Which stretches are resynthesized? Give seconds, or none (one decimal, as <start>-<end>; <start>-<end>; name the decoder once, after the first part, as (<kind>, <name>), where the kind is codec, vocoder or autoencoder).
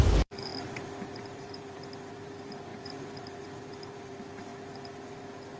0.0-4.5 (vocoder, BigVGAN v2)